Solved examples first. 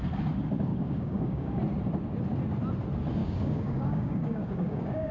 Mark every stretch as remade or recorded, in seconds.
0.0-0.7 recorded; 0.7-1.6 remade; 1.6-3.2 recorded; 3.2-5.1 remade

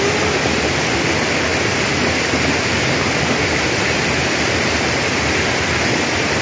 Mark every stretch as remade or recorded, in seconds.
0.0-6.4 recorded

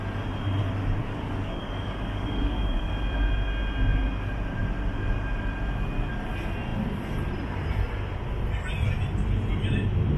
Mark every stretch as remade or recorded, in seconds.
0.0-1.0 recorded; 1.0-2.9 remade; 2.9-10.2 recorded

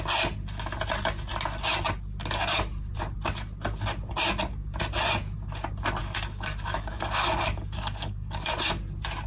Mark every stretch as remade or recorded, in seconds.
0.0-6.0 recorded; 6.0-8.5 remade; 8.5-9.3 recorded

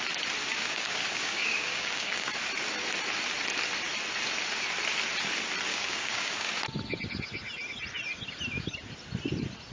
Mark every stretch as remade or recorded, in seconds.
0.0-0.4 recorded; 0.4-2.3 remade; 2.3-5.7 recorded; 5.7-6.5 remade; 6.5-9.7 recorded

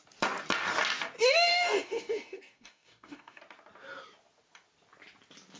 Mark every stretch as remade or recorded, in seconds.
0.0-1.5 recorded; 1.5-3.4 remade; 3.4-5.6 recorded

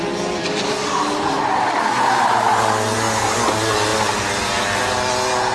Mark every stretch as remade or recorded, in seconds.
0.0-0.4 recorded; 0.4-1.4 remade; 1.4-5.5 recorded

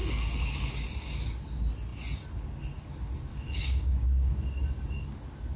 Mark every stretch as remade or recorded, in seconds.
0.0-0.7 remade; 0.7-3.3 recorded; 3.3-4.3 remade; 4.3-5.6 recorded